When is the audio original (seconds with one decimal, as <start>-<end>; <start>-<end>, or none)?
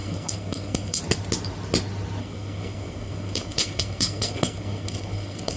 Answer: 1.0-2.2